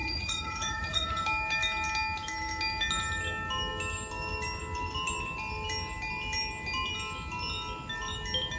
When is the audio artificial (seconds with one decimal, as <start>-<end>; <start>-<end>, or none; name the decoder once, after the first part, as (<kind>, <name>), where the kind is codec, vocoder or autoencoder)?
0.0-1.2 (vocoder, Vocos)